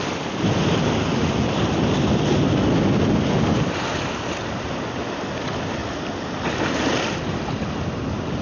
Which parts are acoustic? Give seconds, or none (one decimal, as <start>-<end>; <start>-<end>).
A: 0.0-8.4